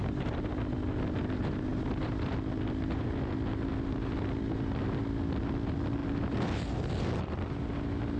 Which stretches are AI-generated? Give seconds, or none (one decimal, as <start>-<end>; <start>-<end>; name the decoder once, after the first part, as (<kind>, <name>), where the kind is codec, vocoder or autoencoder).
none